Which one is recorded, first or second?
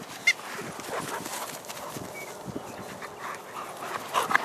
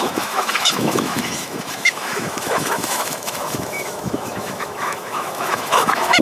first